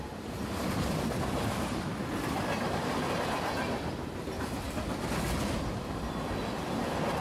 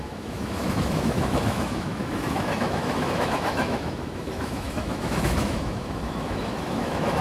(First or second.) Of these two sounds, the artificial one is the second